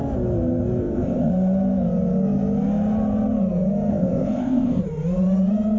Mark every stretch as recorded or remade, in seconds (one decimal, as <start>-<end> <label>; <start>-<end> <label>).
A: 0.0-0.8 recorded; 0.8-1.3 remade; 1.3-3.9 recorded; 3.9-4.8 remade; 4.8-5.8 recorded